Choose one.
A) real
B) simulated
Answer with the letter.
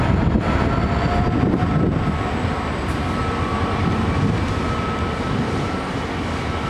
A